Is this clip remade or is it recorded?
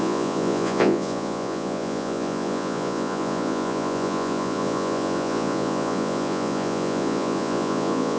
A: remade